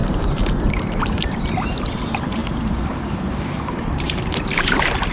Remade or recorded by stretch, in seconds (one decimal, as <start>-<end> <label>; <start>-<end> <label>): 0.0-5.1 remade